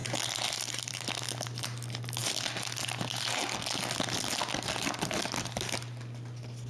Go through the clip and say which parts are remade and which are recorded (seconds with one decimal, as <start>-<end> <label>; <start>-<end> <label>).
0.0-0.9 remade; 0.9-6.7 recorded